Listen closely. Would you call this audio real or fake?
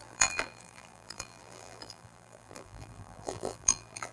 fake